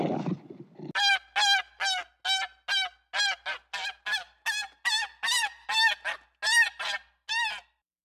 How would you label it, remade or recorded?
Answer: recorded